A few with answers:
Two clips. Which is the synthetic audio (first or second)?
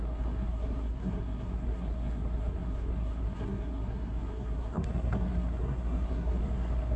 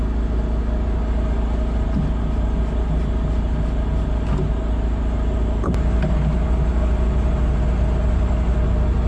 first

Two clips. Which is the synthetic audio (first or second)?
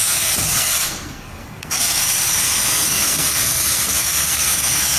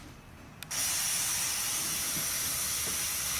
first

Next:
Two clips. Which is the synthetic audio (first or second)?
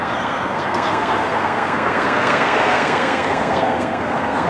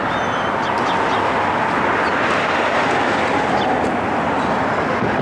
first